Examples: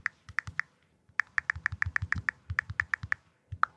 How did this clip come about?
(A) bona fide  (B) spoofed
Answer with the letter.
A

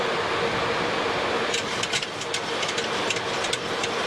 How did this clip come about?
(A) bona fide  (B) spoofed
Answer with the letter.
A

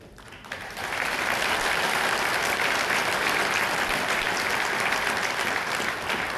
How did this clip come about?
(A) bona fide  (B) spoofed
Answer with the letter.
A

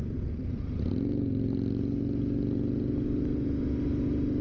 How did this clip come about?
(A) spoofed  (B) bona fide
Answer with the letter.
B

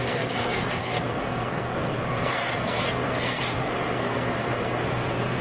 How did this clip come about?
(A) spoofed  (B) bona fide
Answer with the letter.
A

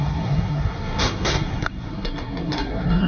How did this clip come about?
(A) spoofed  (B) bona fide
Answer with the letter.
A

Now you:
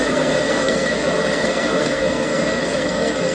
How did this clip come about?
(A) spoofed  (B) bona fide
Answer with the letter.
A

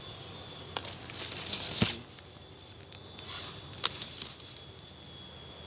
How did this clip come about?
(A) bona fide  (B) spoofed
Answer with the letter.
A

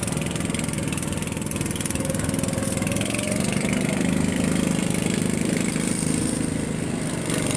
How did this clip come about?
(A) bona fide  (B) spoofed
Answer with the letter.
A